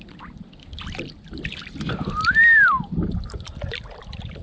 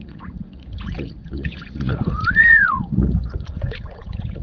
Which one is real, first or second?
first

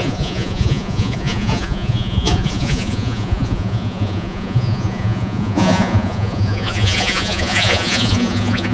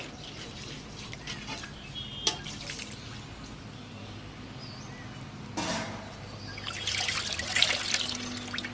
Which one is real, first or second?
second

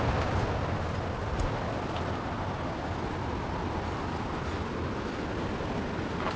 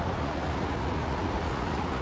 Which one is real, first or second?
first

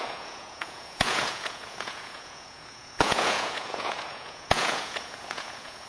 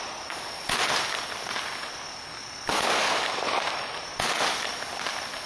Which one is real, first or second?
second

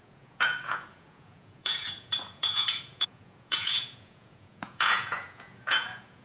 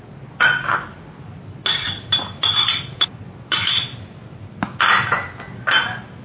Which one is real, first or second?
second